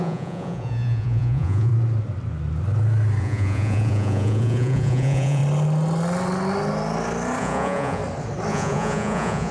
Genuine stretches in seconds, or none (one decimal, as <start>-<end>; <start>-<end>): 1.7-3.2; 5.4-7.4; 8.0-8.5

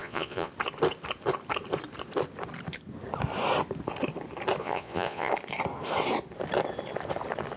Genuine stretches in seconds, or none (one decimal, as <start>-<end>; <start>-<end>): 0.5-4.6; 5.3-7.6